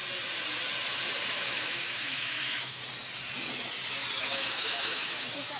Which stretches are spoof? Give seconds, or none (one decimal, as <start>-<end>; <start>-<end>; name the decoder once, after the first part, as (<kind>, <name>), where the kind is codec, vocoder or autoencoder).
1.3-2.8 (autoencoder, DAC-VAE); 4.2-5.6

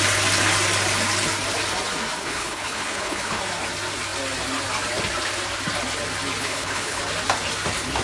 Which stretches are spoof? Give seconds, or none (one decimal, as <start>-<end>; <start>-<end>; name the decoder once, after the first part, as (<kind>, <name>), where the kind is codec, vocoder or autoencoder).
2.2-3.4 (codec, HILCodec); 6.4-7.0

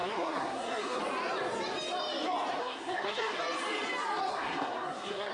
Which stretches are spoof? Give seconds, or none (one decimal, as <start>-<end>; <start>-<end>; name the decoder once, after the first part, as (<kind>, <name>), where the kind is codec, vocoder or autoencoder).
0.0-1.0 (codec, SNAC); 2.6-3.4; 4.3-5.3